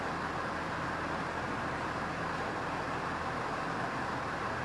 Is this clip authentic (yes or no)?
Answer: yes